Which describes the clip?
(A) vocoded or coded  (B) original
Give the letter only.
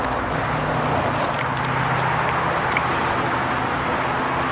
B